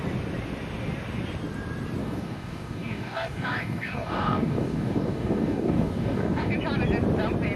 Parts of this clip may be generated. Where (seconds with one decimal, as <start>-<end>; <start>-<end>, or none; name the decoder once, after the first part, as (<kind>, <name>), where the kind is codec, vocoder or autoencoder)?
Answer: 2.0-6.5 (codec, DAC)